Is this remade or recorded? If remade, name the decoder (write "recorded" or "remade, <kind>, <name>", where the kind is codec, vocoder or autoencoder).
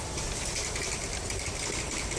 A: recorded